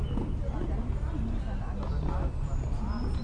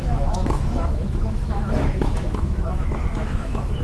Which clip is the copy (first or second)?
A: second